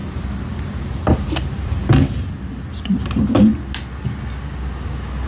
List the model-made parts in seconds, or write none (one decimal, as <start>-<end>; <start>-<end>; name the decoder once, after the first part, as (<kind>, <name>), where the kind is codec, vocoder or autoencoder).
0.0-1.9 (vocoder, BigVGAN v2)